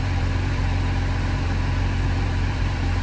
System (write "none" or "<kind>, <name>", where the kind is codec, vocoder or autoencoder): vocoder, BigVGAN v2